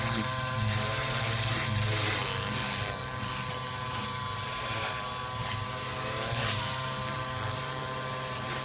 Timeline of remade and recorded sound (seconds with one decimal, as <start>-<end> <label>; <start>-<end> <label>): 0.0-2.2 remade; 2.2-3.5 recorded; 3.5-8.6 remade